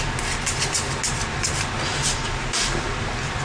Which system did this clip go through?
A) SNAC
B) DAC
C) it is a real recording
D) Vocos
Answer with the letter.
C